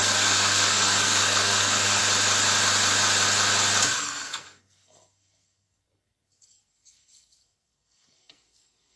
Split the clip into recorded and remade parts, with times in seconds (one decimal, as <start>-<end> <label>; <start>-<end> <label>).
0.0-2.0 remade; 2.0-4.0 recorded; 4.0-9.0 remade